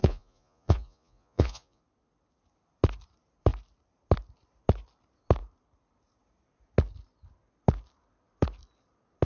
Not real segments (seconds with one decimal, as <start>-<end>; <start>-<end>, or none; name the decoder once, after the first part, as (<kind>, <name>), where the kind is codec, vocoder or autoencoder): 0.0-1.8 (vocoder, Vocos)